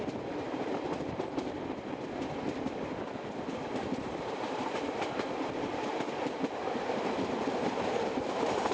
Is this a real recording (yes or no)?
yes